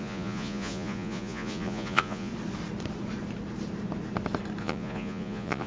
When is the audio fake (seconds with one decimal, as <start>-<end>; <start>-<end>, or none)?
0.0-2.3; 4.6-5.7